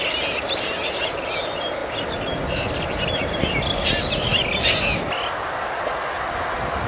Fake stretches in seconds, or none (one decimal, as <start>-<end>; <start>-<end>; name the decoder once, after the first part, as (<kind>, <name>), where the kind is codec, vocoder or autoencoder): none